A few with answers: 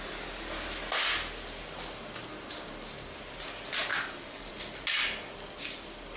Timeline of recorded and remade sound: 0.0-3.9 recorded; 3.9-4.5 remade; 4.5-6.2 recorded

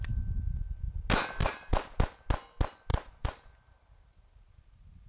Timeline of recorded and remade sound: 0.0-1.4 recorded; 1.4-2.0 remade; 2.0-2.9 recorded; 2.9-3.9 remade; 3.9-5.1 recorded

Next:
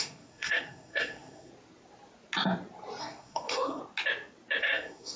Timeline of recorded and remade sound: 0.0-1.5 remade; 1.5-3.0 recorded; 3.0-3.8 remade; 3.8-4.6 recorded; 4.6-5.2 remade

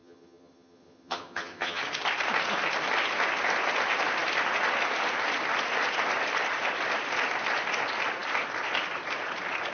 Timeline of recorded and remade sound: 0.0-1.8 remade; 1.8-9.7 recorded